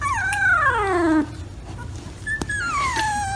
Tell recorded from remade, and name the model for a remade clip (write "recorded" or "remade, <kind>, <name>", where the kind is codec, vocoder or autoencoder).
recorded